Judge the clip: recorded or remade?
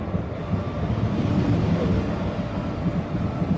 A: recorded